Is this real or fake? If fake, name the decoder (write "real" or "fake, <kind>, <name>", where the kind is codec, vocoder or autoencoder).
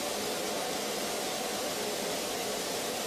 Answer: real